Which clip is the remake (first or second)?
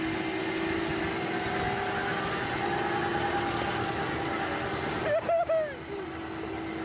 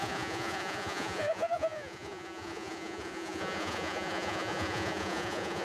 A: second